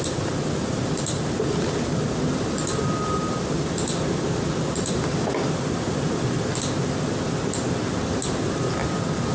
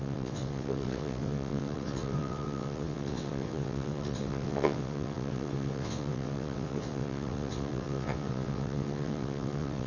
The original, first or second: first